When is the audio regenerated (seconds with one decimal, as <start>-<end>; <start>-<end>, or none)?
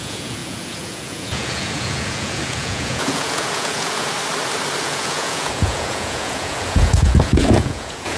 0.0-4.1; 4.8-8.2